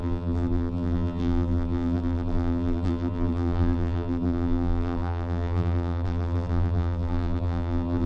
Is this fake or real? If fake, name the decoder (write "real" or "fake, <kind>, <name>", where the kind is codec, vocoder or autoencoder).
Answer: fake, vocoder, BigVGAN v2